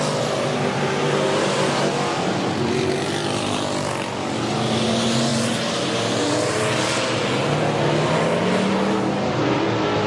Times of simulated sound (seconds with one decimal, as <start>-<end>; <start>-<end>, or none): none